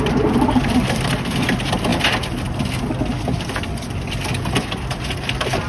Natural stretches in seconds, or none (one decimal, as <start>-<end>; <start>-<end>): 0.0-5.7